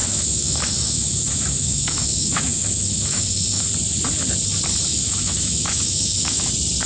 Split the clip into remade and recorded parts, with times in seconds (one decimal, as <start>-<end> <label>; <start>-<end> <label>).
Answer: 0.0-3.7 remade; 3.7-4.9 recorded; 4.9-6.5 remade; 6.5-6.9 recorded